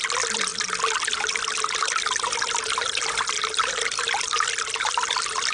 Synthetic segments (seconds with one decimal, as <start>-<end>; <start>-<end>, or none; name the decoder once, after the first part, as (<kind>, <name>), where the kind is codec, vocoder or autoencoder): none